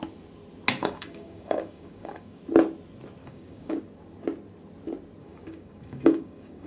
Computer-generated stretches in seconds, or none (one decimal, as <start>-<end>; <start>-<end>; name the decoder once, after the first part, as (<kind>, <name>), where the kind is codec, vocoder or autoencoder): 0.8-2.4 (codec, DAC); 3.2-3.8; 5.2-6.7